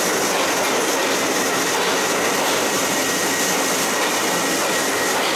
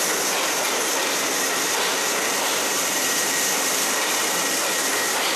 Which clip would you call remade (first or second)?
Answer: second